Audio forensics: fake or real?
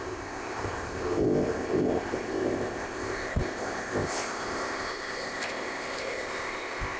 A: fake